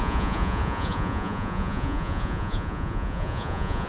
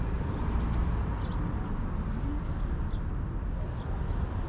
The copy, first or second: first